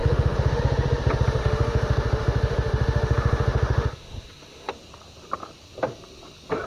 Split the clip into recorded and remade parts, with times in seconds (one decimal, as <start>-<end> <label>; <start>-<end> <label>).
0.0-0.6 remade; 0.6-1.4 recorded; 1.4-4.7 remade; 4.7-6.7 recorded